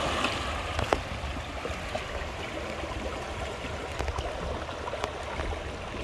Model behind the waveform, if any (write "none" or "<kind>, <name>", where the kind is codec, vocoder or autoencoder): none